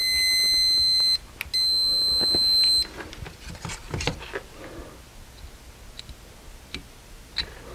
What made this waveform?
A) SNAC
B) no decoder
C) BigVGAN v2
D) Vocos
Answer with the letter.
B